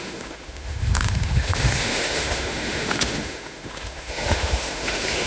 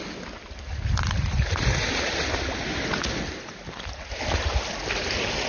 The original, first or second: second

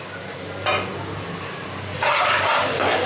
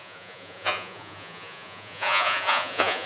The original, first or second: first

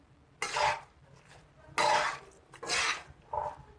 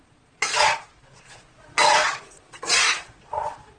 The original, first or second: first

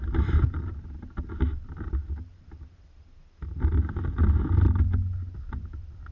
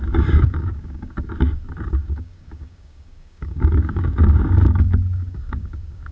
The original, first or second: first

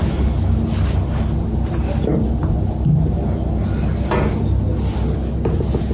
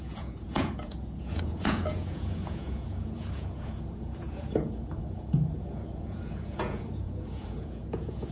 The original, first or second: first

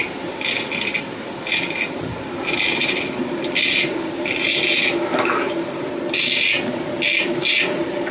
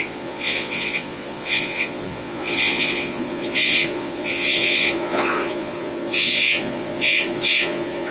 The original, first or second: first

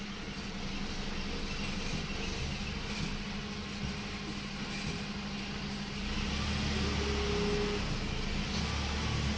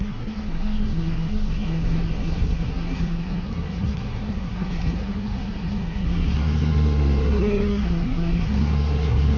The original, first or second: first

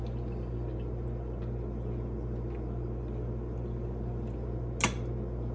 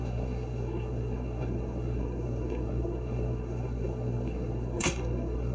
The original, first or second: first